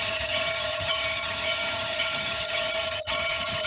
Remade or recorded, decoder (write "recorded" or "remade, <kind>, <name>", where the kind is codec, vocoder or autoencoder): remade, vocoder, HiFi-GAN